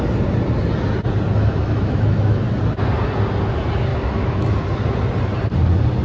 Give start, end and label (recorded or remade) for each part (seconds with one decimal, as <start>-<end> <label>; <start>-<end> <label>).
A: 0.0-1.4 recorded; 1.4-2.4 remade; 2.4-3.9 recorded; 3.9-4.5 remade; 4.5-6.0 recorded